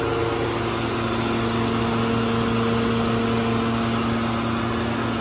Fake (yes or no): no